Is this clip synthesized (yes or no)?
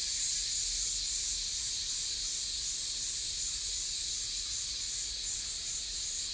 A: no